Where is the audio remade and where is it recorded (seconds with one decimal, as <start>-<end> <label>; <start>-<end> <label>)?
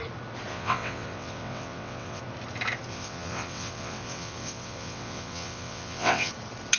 0.0-0.5 recorded; 0.5-2.2 remade; 2.2-2.9 recorded; 2.9-6.3 remade; 6.3-6.8 recorded